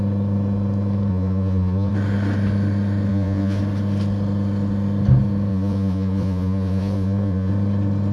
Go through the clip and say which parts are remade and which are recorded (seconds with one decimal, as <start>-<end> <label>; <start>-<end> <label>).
0.0-1.1 recorded; 1.1-1.9 remade; 1.9-3.1 recorded; 3.1-3.6 remade; 3.6-5.5 recorded; 5.5-7.5 remade; 7.5-8.1 recorded